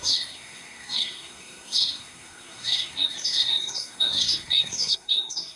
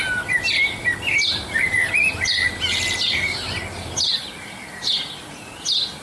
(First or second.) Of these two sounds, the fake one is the first